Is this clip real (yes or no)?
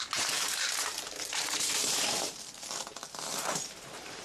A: no